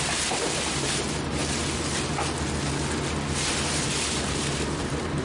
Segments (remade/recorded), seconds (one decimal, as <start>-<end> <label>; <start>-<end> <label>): 0.0-1.4 remade; 1.4-3.7 recorded; 3.7-5.2 remade